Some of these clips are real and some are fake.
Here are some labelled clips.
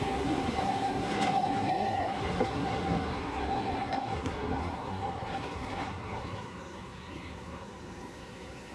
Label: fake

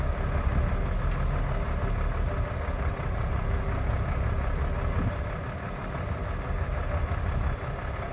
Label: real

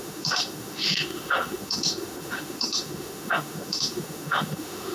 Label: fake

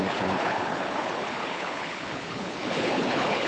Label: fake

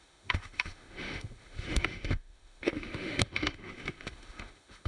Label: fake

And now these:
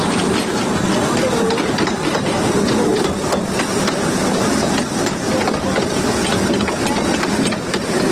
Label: real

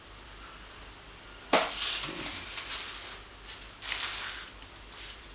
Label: real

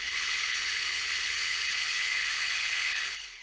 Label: fake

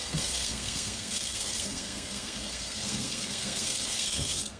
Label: fake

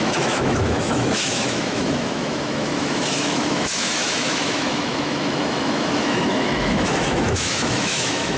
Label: fake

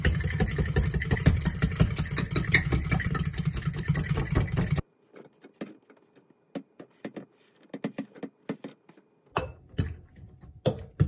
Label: real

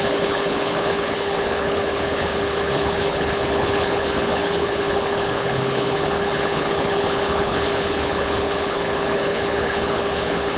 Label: fake